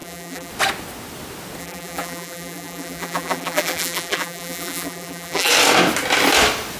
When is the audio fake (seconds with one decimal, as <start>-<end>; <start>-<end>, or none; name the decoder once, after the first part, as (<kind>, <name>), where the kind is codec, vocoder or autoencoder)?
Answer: 0.0-0.5 (vocoder, BigVGAN v2); 1.6-5.5